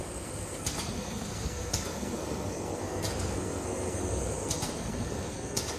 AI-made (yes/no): yes